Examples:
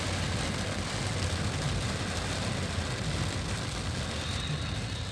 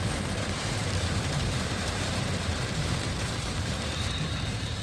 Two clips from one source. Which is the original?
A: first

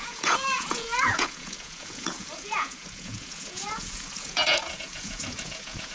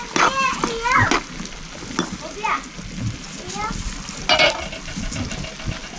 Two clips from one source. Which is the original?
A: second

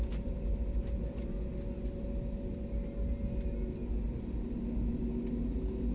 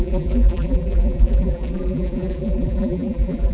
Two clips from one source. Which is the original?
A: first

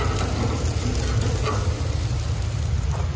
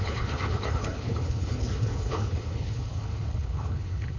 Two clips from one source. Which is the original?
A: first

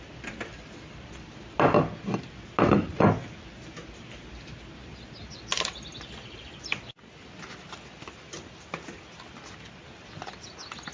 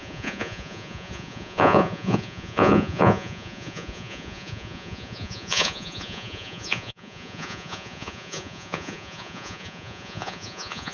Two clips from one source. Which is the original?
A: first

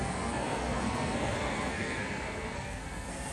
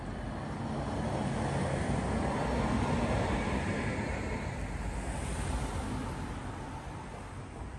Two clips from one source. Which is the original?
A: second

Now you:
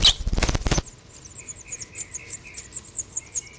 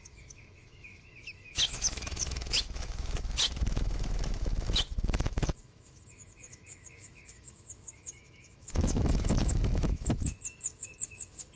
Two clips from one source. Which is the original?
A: first